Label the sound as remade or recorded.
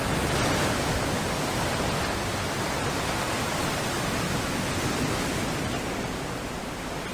recorded